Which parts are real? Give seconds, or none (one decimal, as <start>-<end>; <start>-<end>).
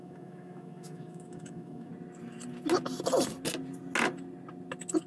1.9-5.1